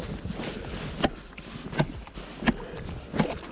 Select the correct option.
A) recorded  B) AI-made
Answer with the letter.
A